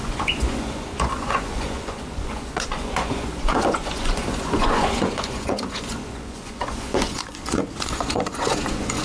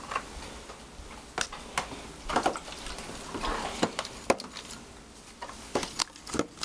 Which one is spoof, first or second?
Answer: first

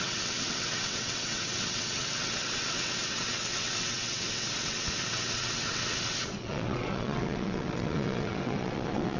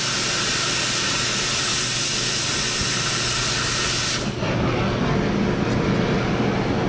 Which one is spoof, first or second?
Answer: first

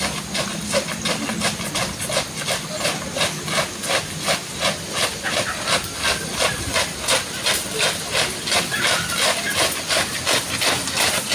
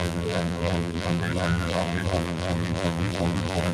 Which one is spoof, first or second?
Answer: second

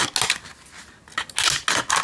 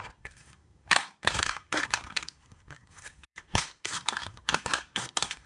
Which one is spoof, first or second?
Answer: second